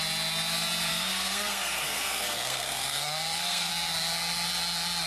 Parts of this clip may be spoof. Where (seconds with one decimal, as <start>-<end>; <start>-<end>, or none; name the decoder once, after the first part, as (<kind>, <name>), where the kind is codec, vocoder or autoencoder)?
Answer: 0.9-3.7 (codec, SNAC)